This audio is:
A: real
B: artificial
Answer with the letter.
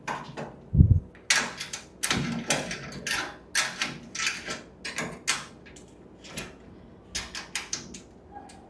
A